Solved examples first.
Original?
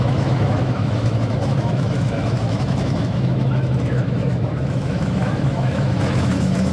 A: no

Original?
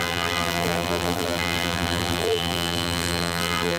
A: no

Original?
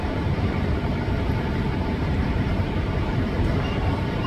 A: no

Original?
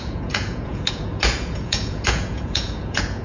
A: no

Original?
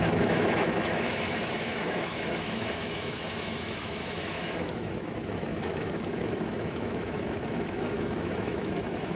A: no